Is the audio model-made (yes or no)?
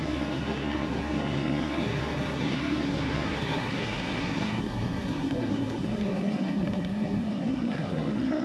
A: yes